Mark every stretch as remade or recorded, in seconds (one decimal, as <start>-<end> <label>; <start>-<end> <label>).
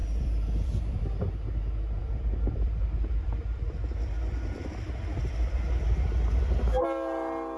0.0-1.0 remade; 1.0-2.0 recorded; 2.0-6.6 remade; 6.6-7.6 recorded